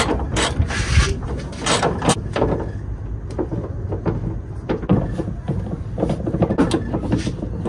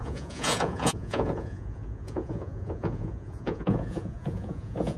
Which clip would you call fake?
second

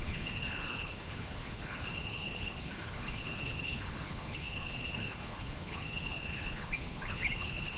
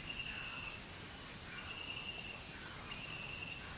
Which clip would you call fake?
first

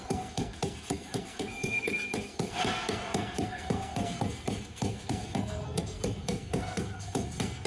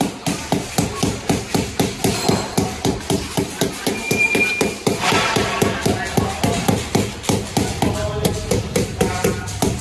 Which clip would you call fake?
first